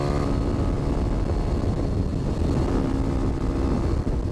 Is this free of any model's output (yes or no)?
yes